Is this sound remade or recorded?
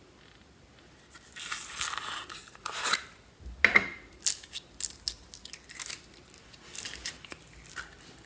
recorded